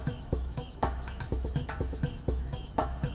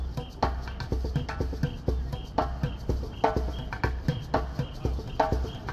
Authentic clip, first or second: second